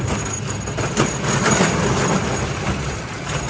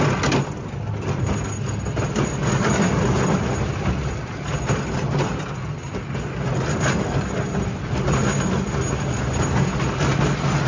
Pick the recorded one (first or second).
second